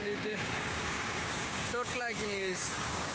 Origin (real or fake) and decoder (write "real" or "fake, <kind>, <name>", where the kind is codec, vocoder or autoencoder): fake, codec, DAC